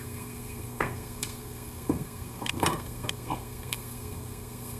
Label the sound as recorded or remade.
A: remade